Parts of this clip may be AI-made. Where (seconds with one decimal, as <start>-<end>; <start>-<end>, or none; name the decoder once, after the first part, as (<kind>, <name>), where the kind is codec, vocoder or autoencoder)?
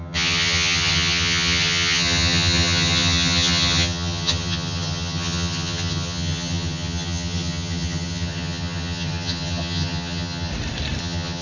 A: 0.0-10.5 (vocoder, HiFi-GAN); 11.0-11.4